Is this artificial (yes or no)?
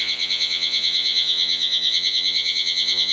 yes